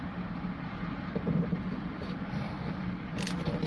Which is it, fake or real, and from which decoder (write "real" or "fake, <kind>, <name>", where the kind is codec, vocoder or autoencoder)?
real